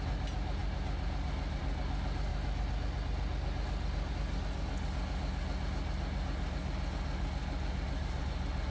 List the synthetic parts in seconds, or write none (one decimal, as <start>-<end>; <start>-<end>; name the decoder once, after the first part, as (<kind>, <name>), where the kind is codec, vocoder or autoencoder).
none